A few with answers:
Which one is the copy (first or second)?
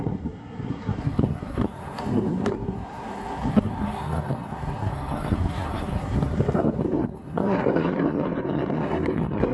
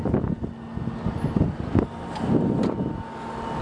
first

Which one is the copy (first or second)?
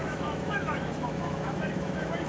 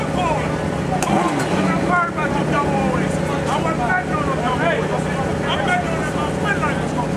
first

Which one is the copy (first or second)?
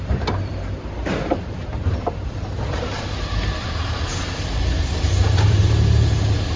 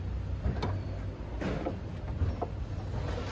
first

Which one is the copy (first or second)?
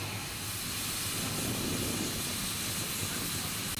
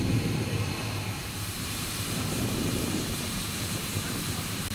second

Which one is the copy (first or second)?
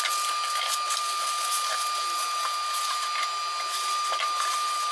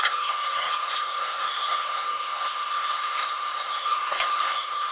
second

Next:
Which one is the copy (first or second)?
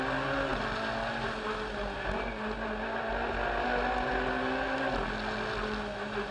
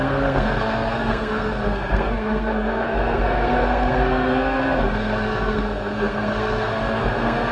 second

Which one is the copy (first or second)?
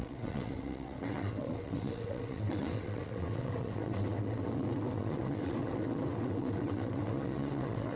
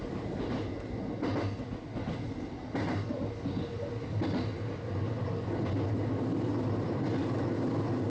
first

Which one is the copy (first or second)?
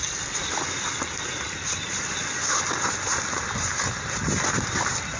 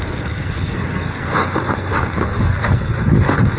second